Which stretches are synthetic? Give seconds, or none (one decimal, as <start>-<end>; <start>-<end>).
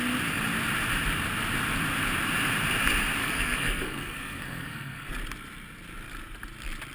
3.2-5.1